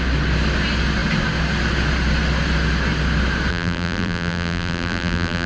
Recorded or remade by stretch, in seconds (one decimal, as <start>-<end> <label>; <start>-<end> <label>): 0.0-3.5 recorded; 3.5-5.5 remade